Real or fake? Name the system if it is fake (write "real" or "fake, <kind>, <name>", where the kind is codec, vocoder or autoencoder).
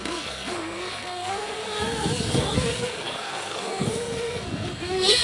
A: fake, codec, SNAC